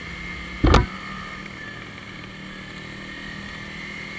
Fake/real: real